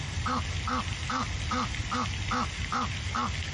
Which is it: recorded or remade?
recorded